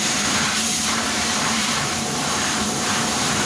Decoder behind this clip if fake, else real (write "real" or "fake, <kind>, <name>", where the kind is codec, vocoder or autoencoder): fake, vocoder, BigVGAN v2